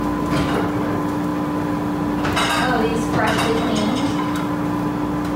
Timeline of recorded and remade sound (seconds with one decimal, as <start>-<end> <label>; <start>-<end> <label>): 0.0-5.4 recorded

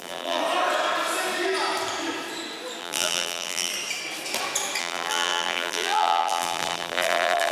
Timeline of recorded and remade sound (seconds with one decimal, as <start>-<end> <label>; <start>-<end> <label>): 0.0-0.4 remade; 0.4-2.8 recorded; 2.8-3.7 remade; 3.7-4.8 recorded; 4.8-7.5 remade

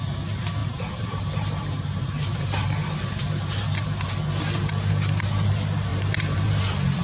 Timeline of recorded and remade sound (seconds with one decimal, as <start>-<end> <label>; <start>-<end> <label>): 0.0-0.6 recorded; 0.6-4.1 remade; 4.1-5.9 recorded; 5.9-6.6 remade; 6.6-7.0 recorded